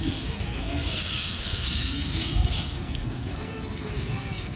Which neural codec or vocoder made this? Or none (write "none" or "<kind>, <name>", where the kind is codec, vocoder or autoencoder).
codec, SNAC